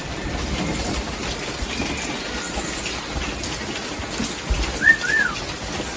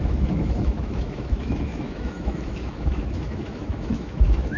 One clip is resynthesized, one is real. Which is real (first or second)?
first